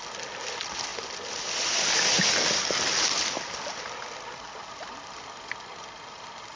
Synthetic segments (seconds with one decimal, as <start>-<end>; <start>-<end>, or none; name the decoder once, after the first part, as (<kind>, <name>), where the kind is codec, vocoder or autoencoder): none

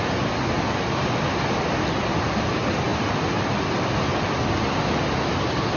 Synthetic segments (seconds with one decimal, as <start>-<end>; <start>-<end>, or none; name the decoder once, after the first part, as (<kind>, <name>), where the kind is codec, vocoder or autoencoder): none

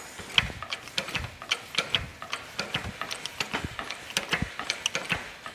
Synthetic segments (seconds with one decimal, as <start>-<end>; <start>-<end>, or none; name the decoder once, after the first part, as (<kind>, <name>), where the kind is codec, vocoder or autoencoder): none

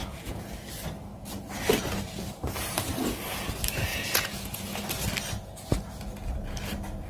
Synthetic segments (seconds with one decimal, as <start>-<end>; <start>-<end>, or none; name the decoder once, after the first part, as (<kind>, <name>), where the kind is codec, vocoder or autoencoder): 0.0-0.5 (vocoder, Vocos); 3.9-4.8

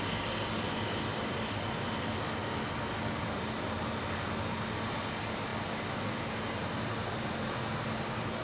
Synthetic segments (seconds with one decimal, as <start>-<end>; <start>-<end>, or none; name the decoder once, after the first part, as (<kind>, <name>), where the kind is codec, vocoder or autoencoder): none

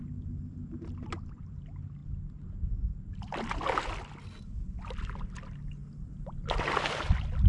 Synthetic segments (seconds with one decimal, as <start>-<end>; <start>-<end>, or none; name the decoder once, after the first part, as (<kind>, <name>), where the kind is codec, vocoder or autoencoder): none